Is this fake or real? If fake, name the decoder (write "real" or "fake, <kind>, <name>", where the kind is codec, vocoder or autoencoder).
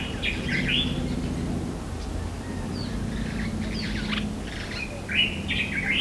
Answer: real